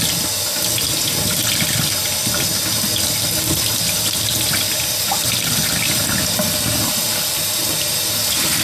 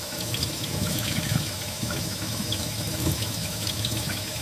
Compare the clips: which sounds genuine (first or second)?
first